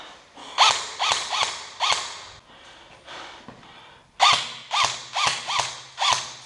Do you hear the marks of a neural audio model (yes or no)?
no